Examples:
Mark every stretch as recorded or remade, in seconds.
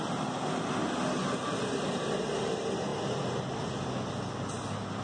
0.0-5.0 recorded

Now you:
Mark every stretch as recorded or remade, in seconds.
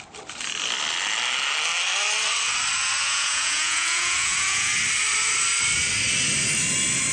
0.0-3.0 recorded; 3.0-4.7 remade; 4.7-7.1 recorded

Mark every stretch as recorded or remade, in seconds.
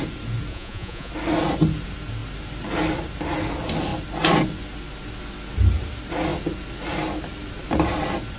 0.0-0.5 recorded; 0.5-1.1 remade; 1.1-8.4 recorded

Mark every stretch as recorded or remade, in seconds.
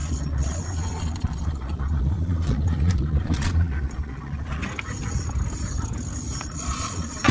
0.0-4.6 remade; 4.6-6.4 recorded; 6.4-7.3 remade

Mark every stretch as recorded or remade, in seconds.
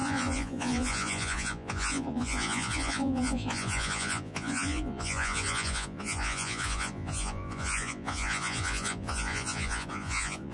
0.0-10.5 remade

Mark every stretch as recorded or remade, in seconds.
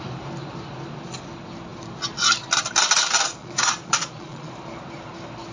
0.0-3.4 recorded; 3.4-4.5 remade; 4.5-5.5 recorded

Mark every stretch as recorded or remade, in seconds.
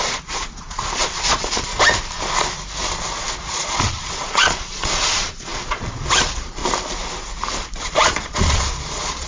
0.0-1.7 remade; 1.7-3.4 recorded; 3.4-6.6 remade; 6.6-7.8 recorded; 7.8-9.3 remade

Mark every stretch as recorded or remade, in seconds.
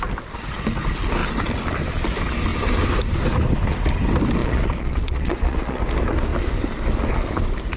0.0-4.4 recorded; 4.4-5.8 remade; 5.8-7.8 recorded